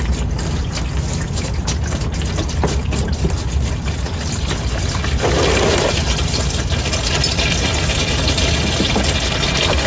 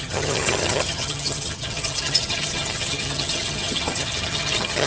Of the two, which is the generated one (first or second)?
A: second